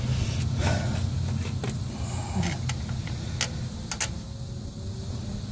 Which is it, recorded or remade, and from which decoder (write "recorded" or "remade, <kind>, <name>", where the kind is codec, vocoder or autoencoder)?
recorded